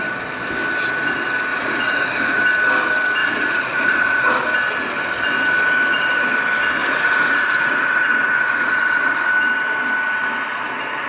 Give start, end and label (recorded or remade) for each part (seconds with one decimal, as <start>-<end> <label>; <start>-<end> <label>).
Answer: 0.0-1.5 recorded; 1.5-2.4 remade; 2.4-3.2 recorded; 3.2-4.3 remade; 4.3-6.8 recorded; 6.8-9.3 remade; 9.3-11.1 recorded